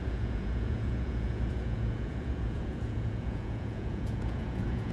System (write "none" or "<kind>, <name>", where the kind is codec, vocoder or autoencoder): vocoder, Vocos